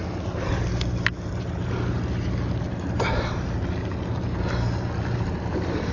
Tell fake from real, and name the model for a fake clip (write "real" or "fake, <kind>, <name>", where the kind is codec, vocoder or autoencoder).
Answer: real